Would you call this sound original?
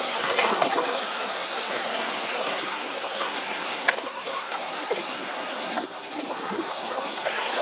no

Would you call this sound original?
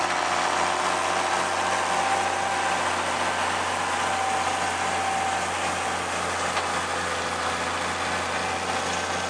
yes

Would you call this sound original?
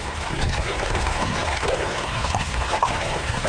no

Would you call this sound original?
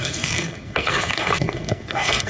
no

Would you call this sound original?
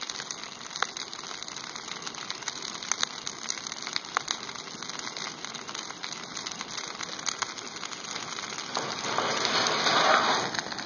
yes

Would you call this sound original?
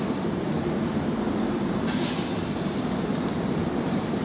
no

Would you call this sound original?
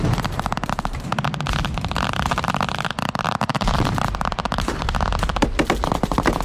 yes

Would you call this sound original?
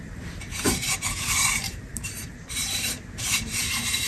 no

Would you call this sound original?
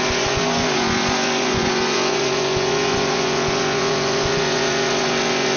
no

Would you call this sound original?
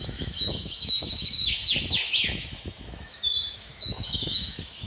no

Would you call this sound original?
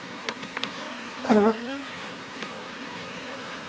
no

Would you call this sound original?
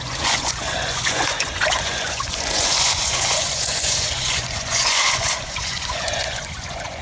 no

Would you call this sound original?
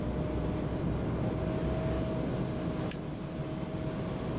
yes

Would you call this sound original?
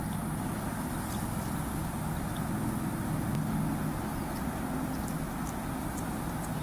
yes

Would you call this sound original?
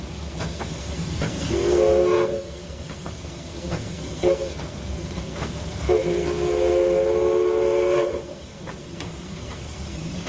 no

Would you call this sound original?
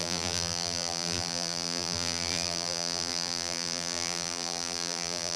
no